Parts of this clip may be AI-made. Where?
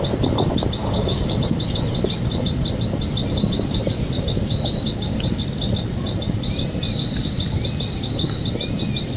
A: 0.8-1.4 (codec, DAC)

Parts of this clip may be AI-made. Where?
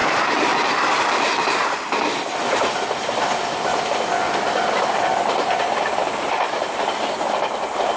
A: 0.0-1.8 (vocoder, BigVGAN v2); 5.1-8.0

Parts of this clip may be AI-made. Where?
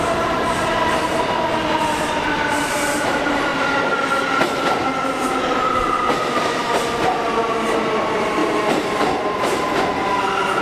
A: 0.0-1.1 (vocoder, BigVGAN v2); 2.0-3.5; 8.0-8.4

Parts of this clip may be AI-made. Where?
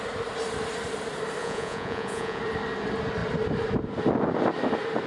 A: 1.4-2.4 (vocoder, Vocos)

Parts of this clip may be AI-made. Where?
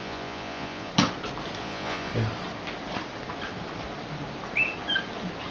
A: 0.0-0.9 (vocoder, Vocos); 1.6-2.1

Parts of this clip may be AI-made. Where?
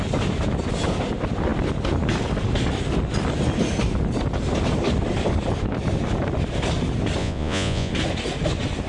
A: 7.2-7.9 (vocoder, Vocos)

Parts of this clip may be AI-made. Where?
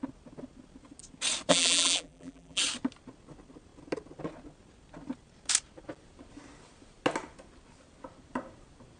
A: 1.5-2.6 (vocoder, BigVGAN v2)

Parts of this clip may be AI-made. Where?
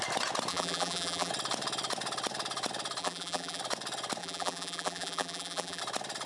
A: 0.5-1.3 (vocoder, BigVGAN v2); 3.0-3.6; 4.2-5.8